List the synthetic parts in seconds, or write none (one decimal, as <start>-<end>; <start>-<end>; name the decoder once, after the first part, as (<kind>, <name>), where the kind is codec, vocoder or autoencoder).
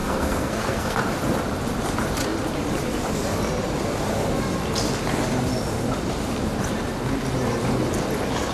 0.0-1.0 (codec, SNAC)